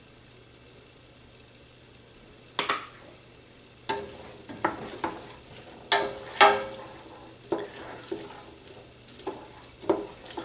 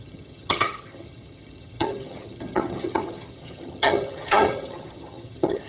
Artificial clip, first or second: second